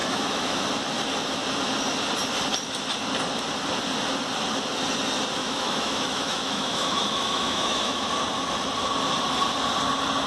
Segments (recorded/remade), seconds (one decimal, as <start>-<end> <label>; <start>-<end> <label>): 0.0-0.6 remade; 0.6-5.4 recorded; 5.4-8.1 remade; 8.1-10.3 recorded

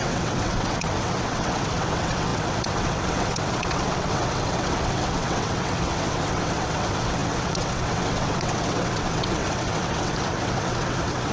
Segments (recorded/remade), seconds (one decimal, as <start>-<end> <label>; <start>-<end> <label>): 0.0-11.3 remade